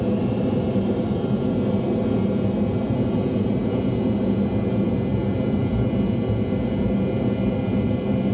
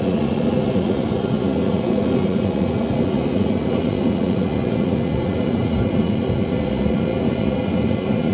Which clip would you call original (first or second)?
first